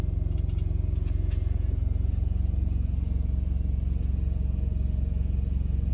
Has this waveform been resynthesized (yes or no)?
no